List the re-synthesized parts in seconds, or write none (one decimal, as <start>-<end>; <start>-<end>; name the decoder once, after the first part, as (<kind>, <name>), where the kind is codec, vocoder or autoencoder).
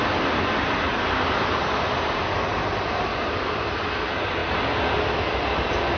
none